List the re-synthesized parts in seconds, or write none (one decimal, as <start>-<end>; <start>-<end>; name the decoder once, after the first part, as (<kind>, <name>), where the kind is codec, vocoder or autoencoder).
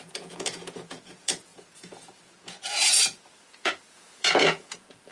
0.0-5.1 (vocoder, Vocos)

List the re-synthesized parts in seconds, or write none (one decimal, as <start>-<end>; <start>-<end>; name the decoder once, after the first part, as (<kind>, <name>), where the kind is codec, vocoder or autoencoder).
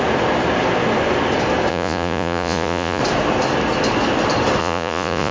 1.7-3.0 (vocoder, Vocos); 4.6-5.3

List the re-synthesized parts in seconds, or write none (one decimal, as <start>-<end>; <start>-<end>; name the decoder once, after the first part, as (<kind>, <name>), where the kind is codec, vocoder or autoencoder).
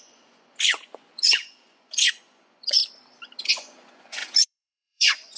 0.0-2.8 (vocoder, Vocos); 3.4-5.4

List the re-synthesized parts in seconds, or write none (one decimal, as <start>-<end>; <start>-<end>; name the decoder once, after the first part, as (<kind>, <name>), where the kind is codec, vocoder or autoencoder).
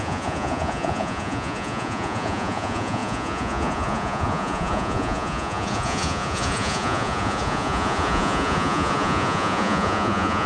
0.0-10.5 (vocoder, Vocos)